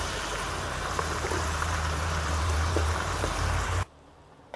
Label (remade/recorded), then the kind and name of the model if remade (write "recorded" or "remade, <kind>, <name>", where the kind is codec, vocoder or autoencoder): remade, vocoder, BigVGAN v2